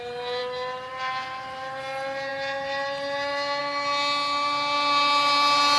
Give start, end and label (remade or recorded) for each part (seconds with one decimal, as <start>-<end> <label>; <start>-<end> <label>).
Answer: 0.0-5.8 recorded